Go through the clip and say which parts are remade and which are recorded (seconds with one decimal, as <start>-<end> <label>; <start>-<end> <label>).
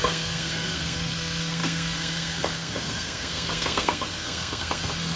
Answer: 0.0-5.2 remade